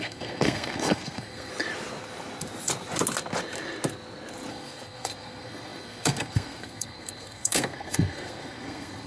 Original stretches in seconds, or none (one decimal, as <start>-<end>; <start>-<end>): 1.5-4.5